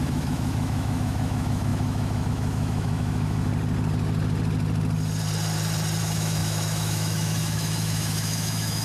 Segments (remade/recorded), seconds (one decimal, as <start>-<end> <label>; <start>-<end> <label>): 0.0-3.5 remade; 3.5-6.0 recorded; 6.0-8.8 remade